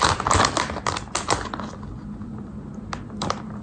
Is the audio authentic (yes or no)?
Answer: yes